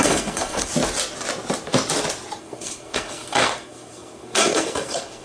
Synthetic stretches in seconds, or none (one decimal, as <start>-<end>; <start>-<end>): 0.0-0.7; 2.4-5.2